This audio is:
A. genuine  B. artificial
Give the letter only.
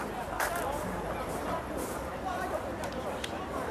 B